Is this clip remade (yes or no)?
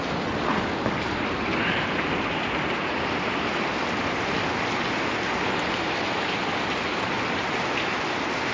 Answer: no